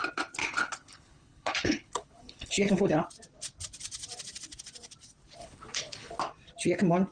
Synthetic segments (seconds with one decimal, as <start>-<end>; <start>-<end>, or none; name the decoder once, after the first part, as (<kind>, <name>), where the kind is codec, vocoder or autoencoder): 0.4-3.0 (codec, HILCodec); 5.4-6.2